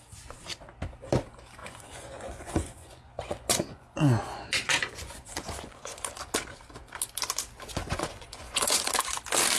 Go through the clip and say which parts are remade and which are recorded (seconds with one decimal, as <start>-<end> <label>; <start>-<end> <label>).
0.0-1.6 recorded; 1.6-6.1 remade; 6.1-7.8 recorded; 7.8-8.9 remade; 8.9-9.6 recorded